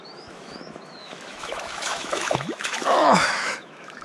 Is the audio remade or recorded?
remade